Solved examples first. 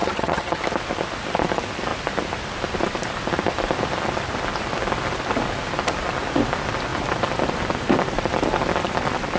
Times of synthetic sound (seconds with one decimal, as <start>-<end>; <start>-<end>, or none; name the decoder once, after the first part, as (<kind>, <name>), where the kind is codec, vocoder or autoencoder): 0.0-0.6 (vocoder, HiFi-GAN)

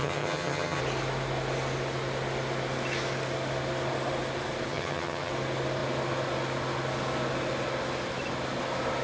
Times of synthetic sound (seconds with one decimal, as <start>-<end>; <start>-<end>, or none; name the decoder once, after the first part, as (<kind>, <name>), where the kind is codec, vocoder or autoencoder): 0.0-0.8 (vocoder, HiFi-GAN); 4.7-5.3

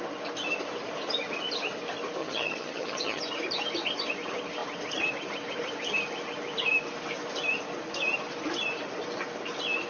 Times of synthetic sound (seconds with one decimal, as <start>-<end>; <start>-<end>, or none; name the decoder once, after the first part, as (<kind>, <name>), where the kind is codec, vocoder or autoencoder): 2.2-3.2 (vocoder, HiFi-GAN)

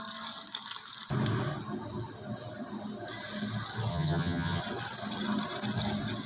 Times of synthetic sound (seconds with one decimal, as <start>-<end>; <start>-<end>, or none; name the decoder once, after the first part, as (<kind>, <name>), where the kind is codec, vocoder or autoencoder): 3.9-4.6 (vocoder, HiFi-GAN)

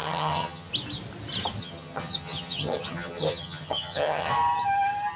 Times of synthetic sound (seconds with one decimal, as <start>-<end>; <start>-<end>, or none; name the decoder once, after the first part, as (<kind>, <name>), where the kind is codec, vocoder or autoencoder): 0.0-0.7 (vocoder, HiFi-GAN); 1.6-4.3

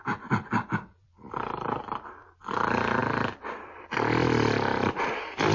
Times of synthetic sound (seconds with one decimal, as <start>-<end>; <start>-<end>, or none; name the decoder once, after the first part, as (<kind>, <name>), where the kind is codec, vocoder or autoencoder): none

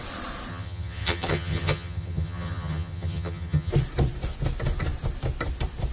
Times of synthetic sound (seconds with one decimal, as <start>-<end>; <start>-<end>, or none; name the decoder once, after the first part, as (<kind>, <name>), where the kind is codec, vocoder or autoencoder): 0.5-3.7 (vocoder, HiFi-GAN)